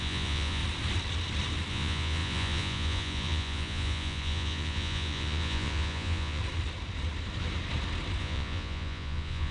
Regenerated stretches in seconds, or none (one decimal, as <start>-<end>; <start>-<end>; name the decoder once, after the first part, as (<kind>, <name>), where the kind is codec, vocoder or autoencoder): 0.0-0.6 (vocoder, Vocos); 1.7-6.4; 8.2-9.5